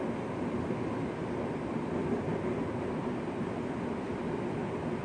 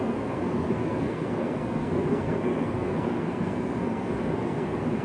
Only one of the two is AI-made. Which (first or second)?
second